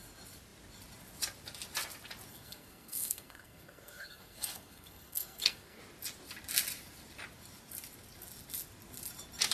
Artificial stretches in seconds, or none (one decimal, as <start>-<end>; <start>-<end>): 2.3-5.8